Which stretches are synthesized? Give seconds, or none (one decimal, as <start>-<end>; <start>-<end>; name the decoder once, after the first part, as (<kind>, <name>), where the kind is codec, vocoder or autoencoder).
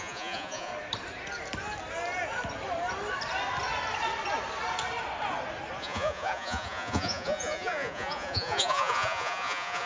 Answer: 0.0-0.7 (vocoder, Vocos); 5.8-9.9